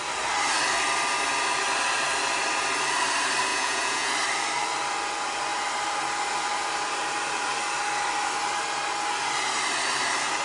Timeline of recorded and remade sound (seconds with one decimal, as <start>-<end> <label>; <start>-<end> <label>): 0.0-3.5 recorded; 3.5-4.1 remade; 4.1-10.4 recorded